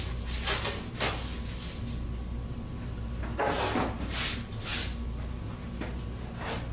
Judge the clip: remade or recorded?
recorded